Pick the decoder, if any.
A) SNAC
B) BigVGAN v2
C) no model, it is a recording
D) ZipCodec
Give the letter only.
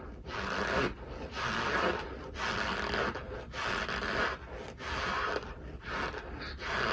C